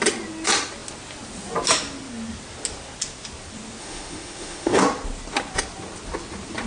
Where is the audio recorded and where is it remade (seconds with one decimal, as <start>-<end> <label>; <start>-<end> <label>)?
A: 0.0-3.8 recorded; 3.8-4.8 remade; 4.8-6.7 recorded